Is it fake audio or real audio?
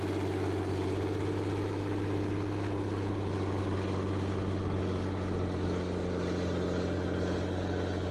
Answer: real